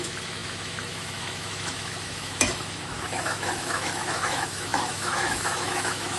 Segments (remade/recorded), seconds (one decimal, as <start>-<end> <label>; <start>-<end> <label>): 0.0-6.2 remade